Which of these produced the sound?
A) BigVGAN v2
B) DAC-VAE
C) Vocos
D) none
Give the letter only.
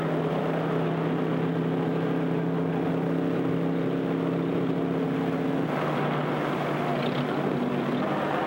D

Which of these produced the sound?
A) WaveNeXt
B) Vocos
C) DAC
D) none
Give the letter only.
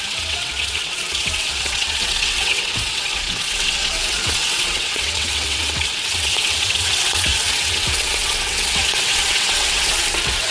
A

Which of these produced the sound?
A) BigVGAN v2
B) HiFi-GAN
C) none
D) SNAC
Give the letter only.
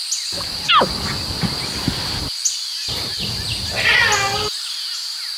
C